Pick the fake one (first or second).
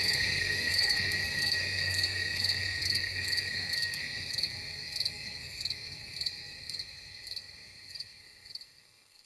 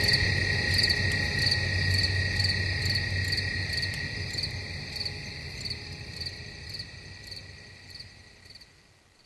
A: first